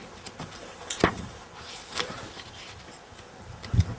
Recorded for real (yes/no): yes